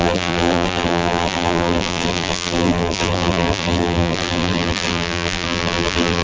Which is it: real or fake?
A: fake